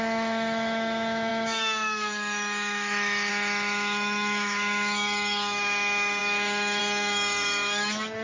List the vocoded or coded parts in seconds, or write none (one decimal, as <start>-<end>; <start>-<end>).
0.0-8.2